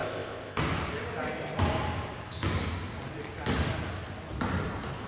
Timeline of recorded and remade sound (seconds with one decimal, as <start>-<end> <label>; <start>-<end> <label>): 0.0-0.6 remade; 0.6-5.1 recorded